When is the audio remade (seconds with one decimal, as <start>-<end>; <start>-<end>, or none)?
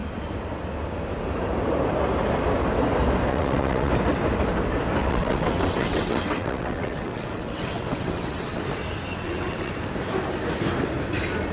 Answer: 3.3-3.9; 5.0-8.6; 9.1-9.7